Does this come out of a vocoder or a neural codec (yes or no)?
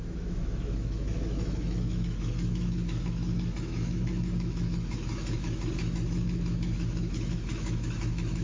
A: yes